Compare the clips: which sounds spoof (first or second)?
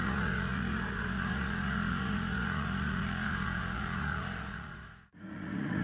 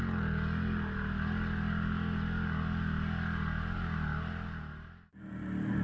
first